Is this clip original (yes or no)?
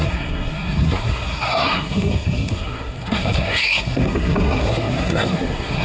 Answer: no